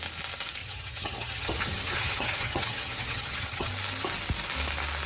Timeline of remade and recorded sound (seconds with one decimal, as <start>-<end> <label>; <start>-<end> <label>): 0.0-0.6 recorded; 0.6-3.7 remade; 3.7-5.1 recorded